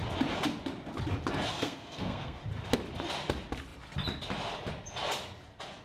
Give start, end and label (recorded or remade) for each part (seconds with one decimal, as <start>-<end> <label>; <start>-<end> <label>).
0.0-1.5 recorded; 1.5-2.4 remade; 2.4-5.8 recorded